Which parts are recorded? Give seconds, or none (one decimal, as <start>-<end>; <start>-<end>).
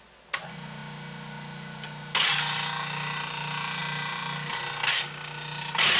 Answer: 0.0-6.0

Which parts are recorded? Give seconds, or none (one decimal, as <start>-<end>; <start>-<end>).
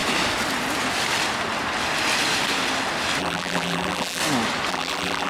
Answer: 0.0-3.2; 4.2-4.7